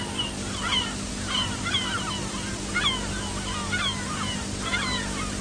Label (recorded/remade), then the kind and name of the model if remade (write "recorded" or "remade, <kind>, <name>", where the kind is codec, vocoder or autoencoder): recorded